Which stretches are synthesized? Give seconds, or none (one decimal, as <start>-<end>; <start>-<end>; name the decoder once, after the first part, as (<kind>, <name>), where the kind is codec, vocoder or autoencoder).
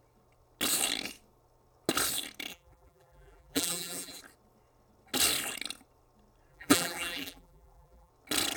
2.5-4.2 (vocoder, BigVGAN v2); 6.5-8.1